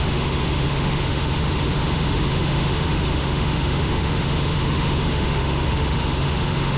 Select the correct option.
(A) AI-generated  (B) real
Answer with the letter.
A